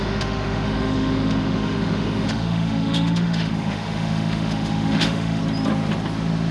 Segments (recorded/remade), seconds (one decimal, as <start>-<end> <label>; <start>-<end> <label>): 0.0-5.4 remade; 5.4-6.5 recorded